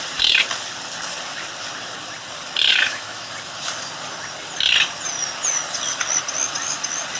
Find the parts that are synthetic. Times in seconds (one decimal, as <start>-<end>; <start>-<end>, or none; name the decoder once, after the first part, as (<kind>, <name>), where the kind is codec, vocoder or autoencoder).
2.7-3.3 (autoencoder, DAC-VAE)